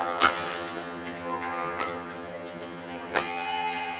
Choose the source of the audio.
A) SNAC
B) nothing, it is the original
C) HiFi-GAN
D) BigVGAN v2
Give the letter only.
C